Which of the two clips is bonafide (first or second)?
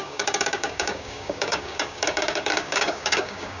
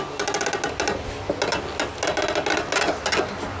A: second